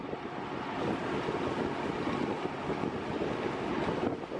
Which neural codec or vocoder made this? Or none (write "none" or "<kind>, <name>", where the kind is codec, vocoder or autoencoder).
none